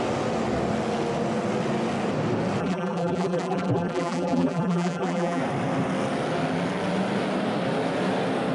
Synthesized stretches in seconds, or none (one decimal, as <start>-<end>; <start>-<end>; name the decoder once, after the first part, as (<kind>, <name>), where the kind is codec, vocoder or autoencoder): 2.6-5.4 (vocoder, BigVGAN v2)